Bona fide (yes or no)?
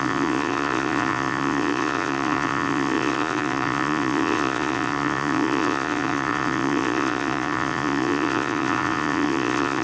no